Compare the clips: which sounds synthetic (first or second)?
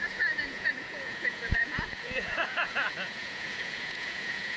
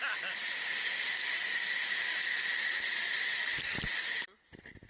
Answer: first